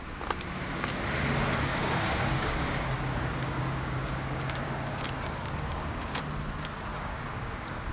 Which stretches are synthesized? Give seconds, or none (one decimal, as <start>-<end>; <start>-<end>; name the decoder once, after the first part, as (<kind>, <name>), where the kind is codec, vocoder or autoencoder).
1.7-6.2 (codec, DAC); 6.9-7.9